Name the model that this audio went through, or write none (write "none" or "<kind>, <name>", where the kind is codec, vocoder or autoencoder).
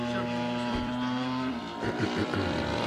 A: vocoder, BigVGAN v2